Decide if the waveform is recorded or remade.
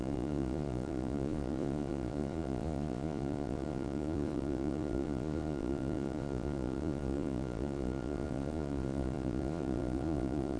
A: remade